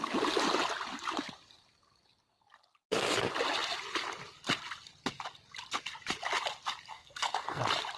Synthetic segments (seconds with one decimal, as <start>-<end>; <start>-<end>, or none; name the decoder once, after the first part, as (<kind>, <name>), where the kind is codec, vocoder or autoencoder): 6.9-7.6 (codec, SNAC)